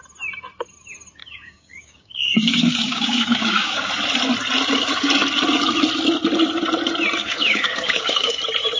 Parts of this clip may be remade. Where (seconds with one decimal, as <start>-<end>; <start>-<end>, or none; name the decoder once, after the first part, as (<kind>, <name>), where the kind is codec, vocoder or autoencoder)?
1.2-3.9 (codec, DAC); 7.2-8.4